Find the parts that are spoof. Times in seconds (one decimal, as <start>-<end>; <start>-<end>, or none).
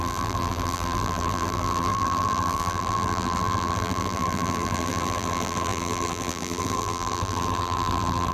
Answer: 0.0-8.3